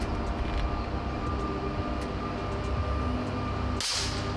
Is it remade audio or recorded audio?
recorded